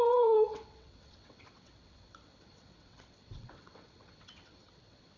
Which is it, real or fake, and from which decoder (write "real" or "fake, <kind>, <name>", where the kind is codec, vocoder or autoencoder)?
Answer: fake, vocoder, WaveNeXt